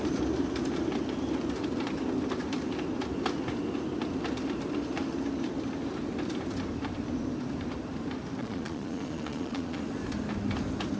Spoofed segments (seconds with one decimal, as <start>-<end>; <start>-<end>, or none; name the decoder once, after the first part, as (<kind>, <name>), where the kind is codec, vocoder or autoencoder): 8.4-9.8 (vocoder, Vocos)